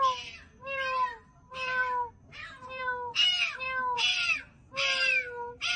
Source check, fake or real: real